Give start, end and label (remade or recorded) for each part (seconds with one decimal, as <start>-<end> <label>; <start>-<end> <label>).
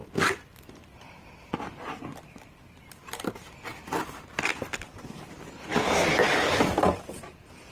0.0-5.7 remade; 5.7-6.6 recorded; 6.6-7.7 remade